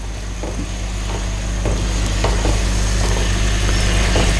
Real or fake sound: real